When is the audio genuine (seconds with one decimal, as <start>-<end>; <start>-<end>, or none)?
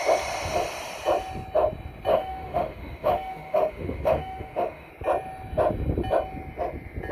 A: 0.0-2.1; 4.9-7.1